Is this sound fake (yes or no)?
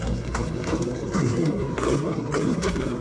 yes